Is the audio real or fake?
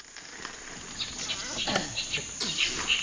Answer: real